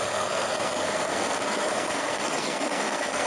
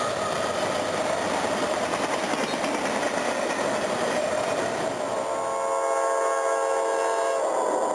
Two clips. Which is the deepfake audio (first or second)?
first